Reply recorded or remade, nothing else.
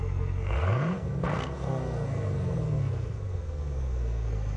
remade